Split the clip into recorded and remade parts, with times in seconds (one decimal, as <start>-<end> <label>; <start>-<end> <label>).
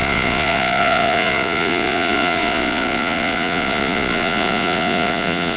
0.0-5.6 remade